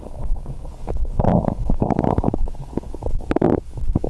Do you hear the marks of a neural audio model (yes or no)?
yes